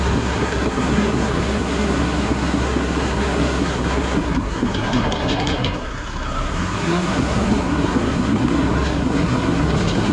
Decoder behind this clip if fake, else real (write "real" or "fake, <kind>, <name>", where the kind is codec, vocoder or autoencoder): fake, codec, SNAC